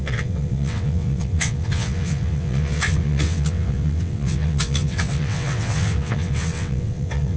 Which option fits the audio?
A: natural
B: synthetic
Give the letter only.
B